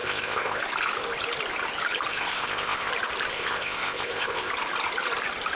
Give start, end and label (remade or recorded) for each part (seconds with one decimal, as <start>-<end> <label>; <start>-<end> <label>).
0.0-0.6 remade; 0.6-2.1 recorded; 2.1-2.9 remade; 2.9-3.3 recorded; 3.3-4.5 remade; 4.5-5.5 recorded